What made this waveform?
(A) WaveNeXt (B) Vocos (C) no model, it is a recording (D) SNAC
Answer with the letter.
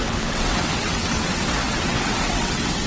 A